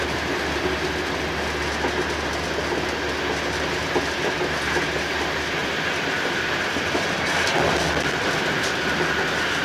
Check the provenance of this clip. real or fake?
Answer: real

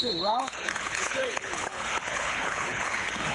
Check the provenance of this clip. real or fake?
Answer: fake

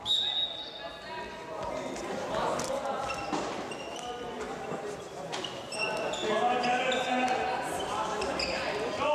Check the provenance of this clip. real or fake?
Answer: real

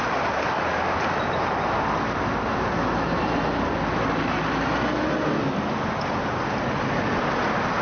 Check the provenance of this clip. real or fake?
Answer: real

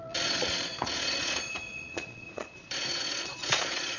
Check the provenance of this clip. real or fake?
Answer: fake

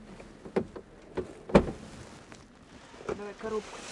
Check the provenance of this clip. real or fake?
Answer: real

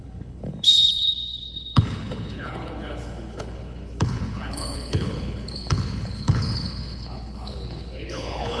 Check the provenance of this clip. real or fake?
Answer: fake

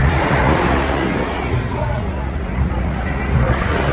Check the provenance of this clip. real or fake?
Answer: fake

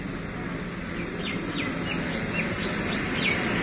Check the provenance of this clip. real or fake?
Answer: real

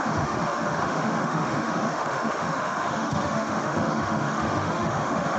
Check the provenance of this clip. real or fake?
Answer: fake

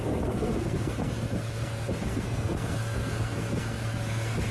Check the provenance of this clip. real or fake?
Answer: fake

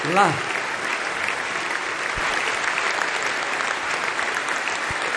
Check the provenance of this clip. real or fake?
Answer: real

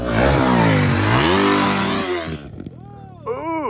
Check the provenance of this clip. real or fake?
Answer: real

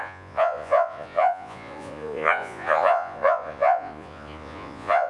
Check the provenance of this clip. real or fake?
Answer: fake